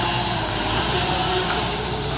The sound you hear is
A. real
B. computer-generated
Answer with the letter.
B